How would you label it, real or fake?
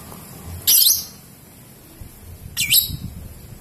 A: real